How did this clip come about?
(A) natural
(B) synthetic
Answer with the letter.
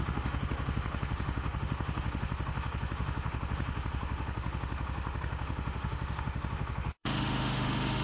B